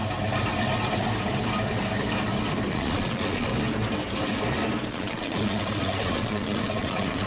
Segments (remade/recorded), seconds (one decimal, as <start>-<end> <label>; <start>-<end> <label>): 0.0-2.7 recorded; 2.7-3.5 remade; 3.5-4.9 recorded; 4.9-7.3 remade

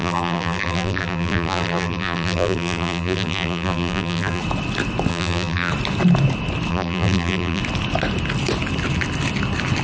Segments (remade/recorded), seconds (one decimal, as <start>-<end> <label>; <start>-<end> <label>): 0.0-4.4 remade; 4.4-5.1 recorded; 5.1-5.7 remade; 5.7-6.7 recorded; 6.7-7.6 remade; 7.6-9.8 recorded